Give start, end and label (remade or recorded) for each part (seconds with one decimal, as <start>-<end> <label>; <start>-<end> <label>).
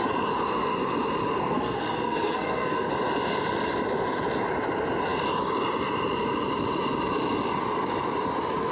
0.0-1.4 recorded; 1.4-2.9 remade; 2.9-8.7 recorded